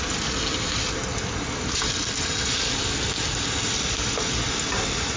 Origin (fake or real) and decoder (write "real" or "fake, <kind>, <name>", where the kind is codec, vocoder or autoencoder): real